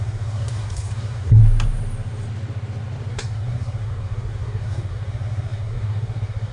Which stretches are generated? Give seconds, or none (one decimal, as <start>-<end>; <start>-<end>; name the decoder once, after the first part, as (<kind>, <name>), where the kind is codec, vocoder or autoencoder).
0.0-1.4 (codec, SNAC); 3.1-6.5